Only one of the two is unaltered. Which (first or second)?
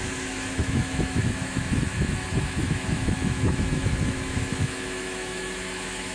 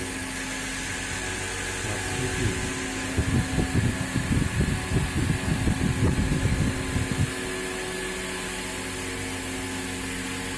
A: second